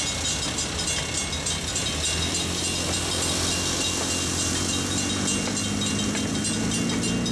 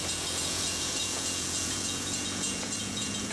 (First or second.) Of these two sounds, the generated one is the second